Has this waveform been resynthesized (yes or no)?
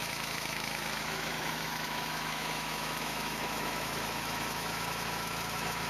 yes